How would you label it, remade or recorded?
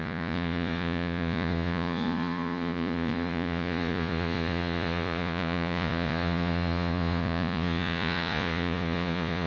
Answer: remade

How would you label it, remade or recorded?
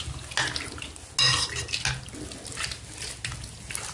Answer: recorded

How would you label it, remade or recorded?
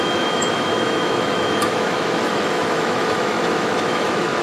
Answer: remade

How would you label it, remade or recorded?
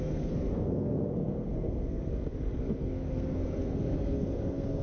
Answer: remade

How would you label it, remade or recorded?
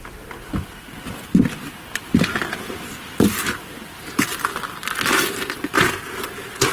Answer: recorded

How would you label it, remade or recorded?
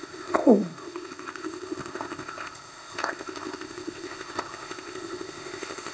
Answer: remade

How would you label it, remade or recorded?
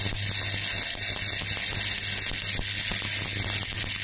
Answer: recorded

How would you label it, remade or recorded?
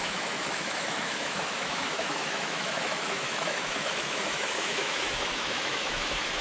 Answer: remade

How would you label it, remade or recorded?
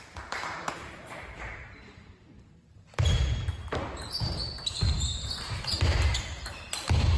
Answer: remade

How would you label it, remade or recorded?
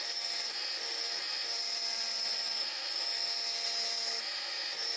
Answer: recorded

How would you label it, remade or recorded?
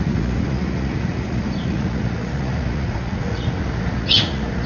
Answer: remade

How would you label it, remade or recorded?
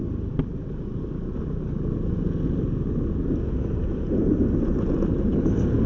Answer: recorded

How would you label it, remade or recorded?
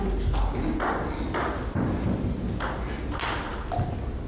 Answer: recorded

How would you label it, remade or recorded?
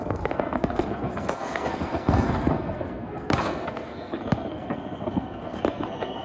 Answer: remade